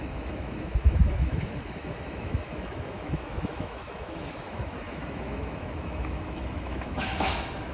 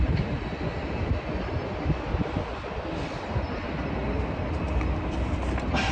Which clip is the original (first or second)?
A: second